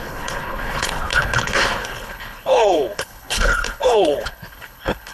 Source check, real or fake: fake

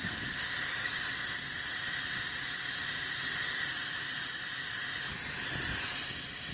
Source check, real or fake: real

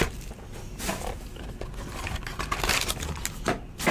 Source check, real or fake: real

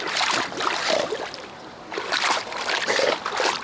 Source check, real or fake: real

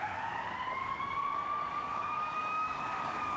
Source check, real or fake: fake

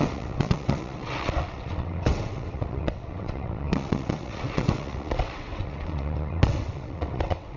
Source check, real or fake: fake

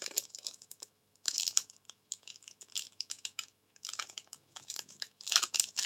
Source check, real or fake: fake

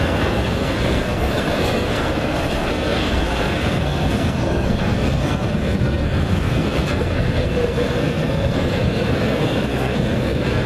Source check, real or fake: fake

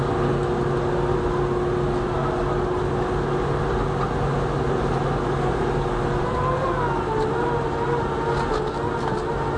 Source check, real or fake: real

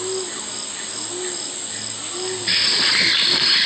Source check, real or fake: real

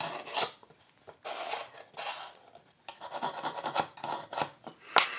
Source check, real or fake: real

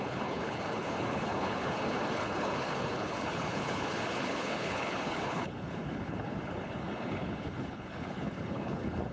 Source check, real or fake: fake